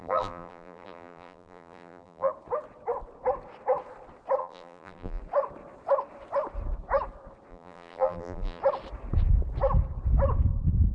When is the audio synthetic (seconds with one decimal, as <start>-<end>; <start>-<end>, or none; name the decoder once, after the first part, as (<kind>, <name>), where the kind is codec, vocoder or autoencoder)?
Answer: 0.0-2.3 (vocoder, BigVGAN v2); 4.4-5.2; 7.5-8.6